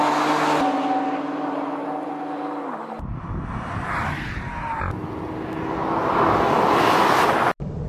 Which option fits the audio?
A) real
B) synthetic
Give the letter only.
A